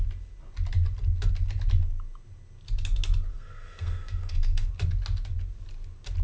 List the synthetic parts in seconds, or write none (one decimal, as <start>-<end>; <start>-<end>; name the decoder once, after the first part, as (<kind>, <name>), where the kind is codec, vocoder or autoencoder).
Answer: 3.3-4.7 (codec, SNAC)